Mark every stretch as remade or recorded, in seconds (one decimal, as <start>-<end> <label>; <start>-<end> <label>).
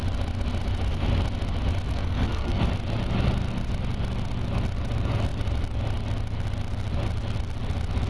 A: 0.0-1.9 recorded; 1.9-2.6 remade; 2.6-8.1 recorded